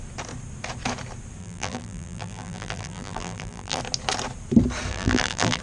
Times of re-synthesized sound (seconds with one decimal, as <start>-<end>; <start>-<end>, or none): 1.4-3.8; 4.9-5.6